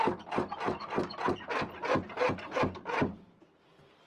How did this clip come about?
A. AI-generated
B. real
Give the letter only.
B